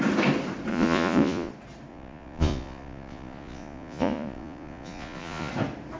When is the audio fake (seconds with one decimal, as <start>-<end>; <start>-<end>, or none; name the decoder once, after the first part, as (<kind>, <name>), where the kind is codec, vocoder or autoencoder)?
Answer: 0.7-1.5 (vocoder, Vocos); 1.9-5.5